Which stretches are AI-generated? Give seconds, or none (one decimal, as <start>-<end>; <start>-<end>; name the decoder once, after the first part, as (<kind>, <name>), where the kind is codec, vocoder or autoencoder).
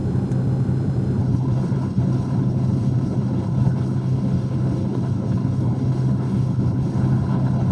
1.2-7.7 (codec, HILCodec)